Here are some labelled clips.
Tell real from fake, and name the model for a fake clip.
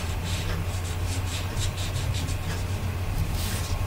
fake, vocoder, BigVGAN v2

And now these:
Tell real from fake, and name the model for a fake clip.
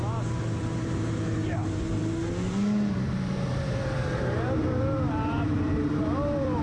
fake, vocoder, BigVGAN v2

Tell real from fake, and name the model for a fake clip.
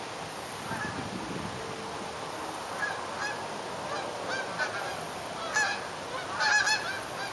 real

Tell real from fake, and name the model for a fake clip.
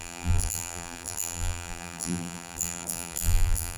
fake, vocoder, BigVGAN v2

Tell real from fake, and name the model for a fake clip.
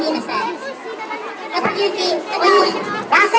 real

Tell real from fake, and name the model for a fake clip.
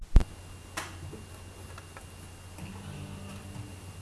real